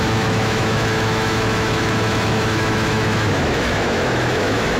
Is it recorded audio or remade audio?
remade